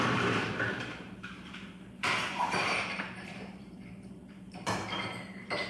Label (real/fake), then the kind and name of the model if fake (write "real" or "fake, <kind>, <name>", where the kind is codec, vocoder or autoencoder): fake, vocoder, BigVGAN v2